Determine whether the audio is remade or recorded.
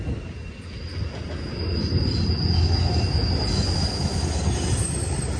recorded